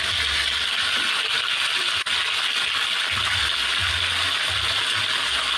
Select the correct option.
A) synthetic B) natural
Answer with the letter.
B